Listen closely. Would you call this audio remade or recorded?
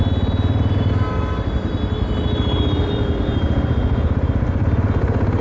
recorded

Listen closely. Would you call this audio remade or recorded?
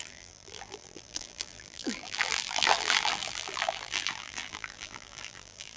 remade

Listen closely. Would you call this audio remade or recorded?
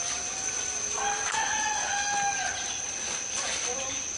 recorded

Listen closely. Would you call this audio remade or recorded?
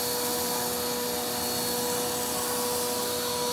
recorded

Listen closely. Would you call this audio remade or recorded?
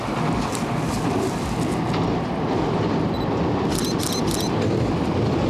recorded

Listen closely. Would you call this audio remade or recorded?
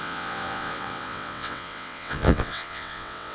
remade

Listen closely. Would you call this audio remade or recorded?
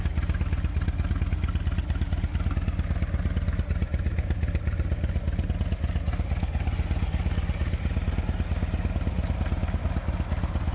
recorded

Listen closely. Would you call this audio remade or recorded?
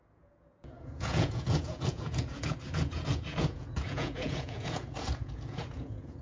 remade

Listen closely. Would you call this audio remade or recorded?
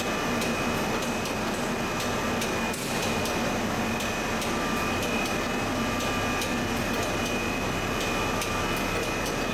recorded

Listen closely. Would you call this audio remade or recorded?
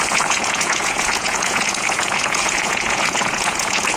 remade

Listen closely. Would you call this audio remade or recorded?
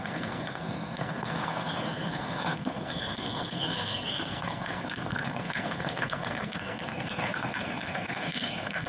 remade